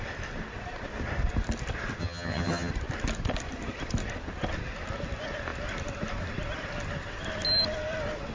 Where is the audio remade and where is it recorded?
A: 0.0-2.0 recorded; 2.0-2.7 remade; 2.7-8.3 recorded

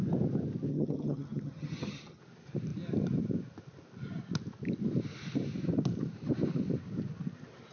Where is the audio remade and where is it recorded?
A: 0.0-0.7 recorded; 0.7-2.2 remade; 2.2-7.7 recorded

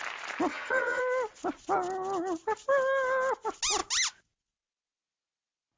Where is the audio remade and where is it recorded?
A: 0.0-0.5 recorded; 0.5-1.0 remade; 1.0-5.8 recorded

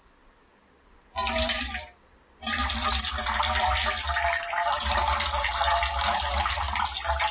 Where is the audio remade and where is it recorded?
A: 0.0-7.3 recorded

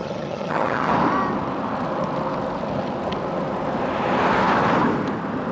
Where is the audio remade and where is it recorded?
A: 0.0-0.9 remade; 0.9-5.5 recorded

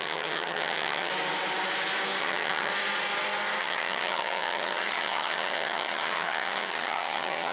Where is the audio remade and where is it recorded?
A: 0.0-1.1 remade; 1.1-2.2 recorded; 2.2-2.7 remade; 2.7-3.6 recorded; 3.6-7.5 remade